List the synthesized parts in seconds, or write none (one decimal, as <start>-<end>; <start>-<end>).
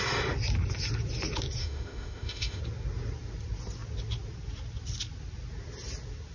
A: 1.6-2.6